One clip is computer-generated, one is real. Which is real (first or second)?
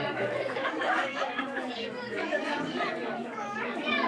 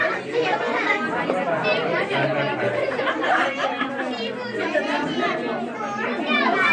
second